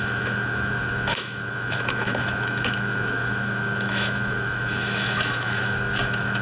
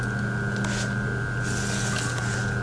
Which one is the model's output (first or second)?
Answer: first